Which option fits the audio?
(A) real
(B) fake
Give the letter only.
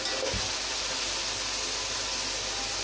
A